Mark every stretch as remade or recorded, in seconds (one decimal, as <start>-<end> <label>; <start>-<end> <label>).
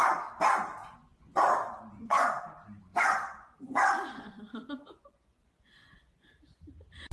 0.0-0.8 recorded; 0.8-2.4 remade; 2.4-2.9 recorded; 2.9-6.3 remade; 6.3-7.1 recorded